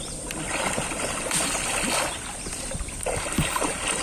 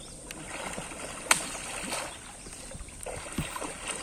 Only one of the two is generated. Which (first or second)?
first